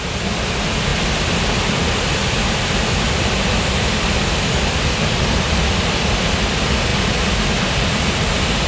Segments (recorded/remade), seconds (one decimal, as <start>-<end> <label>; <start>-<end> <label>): 0.0-2.2 recorded; 2.2-5.6 remade; 5.6-8.7 recorded